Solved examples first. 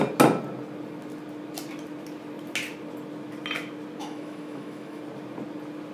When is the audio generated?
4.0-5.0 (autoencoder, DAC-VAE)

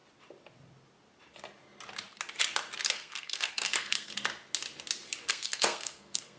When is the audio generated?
2.9-4.1 (codec, SNAC); 5.3-6.4

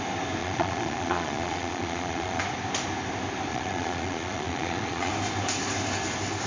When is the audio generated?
0.4-2.4 (vocoder, Vocos); 3.5-5.1